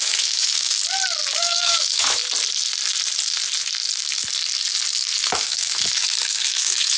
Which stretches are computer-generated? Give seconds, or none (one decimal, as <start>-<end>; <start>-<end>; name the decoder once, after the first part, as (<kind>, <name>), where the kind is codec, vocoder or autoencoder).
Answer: 0.0-0.8 (autoencoder, DAC-VAE); 1.4-2.2; 5.2-7.0